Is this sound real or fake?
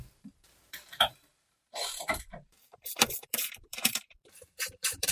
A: fake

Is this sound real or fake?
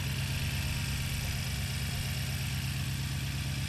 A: real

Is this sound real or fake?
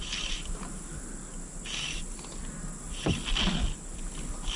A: real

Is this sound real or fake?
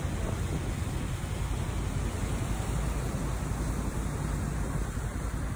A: real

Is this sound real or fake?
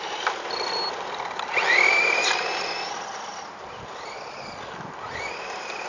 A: real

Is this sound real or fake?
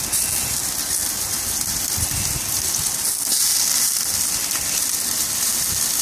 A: real